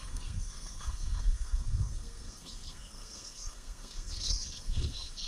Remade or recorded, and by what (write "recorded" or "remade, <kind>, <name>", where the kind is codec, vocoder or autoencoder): remade, codec, SNAC